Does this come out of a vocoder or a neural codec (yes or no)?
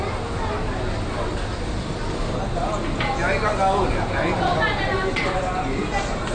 no